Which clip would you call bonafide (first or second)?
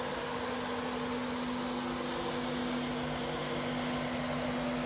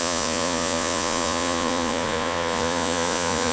first